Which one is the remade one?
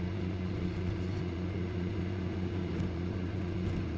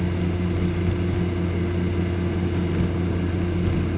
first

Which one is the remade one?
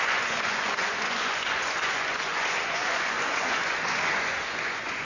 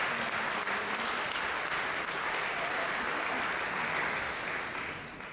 first